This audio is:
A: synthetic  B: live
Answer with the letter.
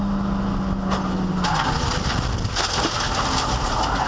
B